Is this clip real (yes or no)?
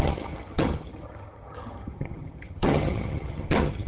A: no